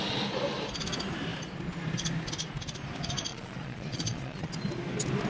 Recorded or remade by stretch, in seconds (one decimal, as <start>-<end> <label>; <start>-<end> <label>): 0.0-3.3 recorded; 3.3-4.5 remade; 4.5-5.3 recorded